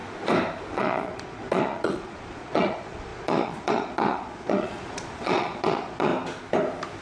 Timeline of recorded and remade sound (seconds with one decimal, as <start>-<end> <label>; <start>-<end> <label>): 0.0-0.7 recorded; 0.7-6.1 remade; 6.1-7.0 recorded